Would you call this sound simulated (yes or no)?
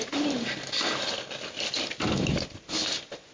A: no